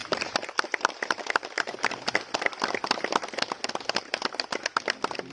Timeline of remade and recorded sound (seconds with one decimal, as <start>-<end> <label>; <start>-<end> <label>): 0.0-1.9 remade; 1.9-5.3 recorded